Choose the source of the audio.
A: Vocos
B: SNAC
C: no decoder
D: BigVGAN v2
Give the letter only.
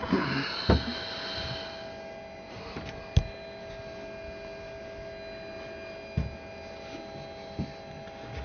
C